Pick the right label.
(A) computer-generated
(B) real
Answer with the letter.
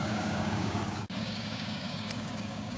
A